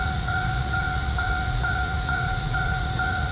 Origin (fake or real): fake